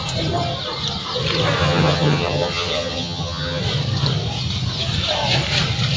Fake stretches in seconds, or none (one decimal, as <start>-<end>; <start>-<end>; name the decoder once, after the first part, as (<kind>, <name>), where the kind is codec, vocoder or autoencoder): 1.6-3.6 (vocoder, HiFi-GAN)